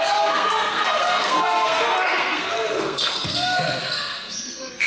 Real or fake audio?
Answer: fake